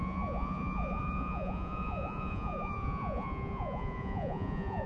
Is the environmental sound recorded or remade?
remade